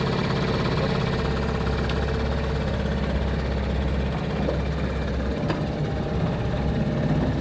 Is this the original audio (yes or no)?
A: yes